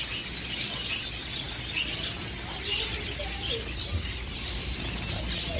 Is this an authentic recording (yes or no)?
yes